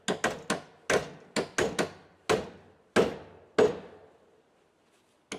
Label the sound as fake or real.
real